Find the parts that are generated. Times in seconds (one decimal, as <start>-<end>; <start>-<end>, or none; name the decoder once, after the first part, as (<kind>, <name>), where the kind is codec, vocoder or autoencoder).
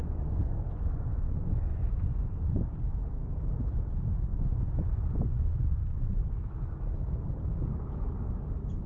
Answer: 0.0-2.6 (vocoder, Vocos); 4.3-6.1